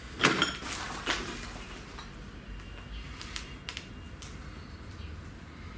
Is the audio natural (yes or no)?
yes